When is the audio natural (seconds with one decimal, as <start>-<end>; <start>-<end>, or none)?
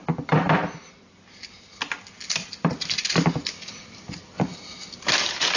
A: 0.9-2.4; 4.9-5.6